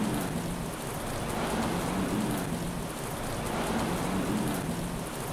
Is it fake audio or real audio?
real